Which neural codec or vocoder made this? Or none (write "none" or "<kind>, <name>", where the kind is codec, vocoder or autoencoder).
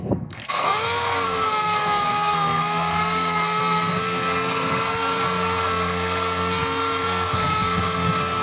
codec, SNAC